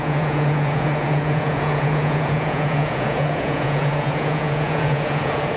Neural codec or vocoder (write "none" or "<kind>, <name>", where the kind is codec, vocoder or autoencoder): vocoder, Vocos